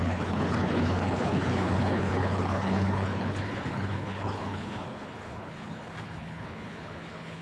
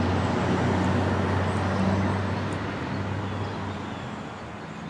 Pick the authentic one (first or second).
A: second